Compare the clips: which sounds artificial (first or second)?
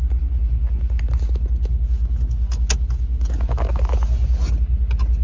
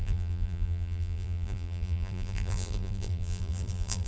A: second